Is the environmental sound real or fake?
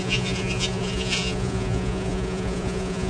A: fake